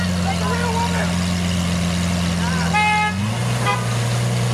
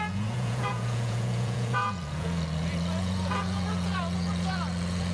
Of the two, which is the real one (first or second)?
first